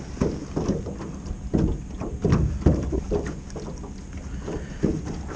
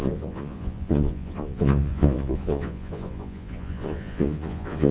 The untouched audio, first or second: first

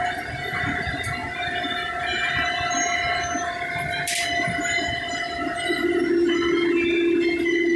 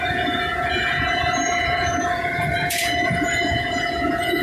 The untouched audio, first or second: first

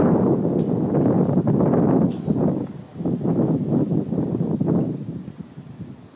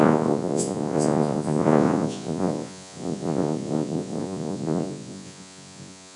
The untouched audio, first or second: first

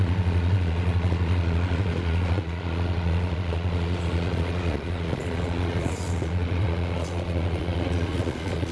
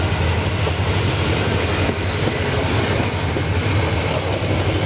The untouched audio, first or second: second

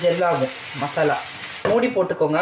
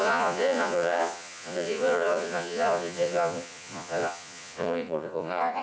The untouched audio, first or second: first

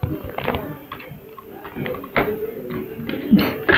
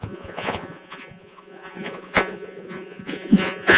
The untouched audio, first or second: first